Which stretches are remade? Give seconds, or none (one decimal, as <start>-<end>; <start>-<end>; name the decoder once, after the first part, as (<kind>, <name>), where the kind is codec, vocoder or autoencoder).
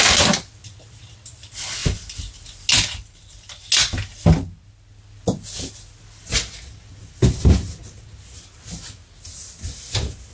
none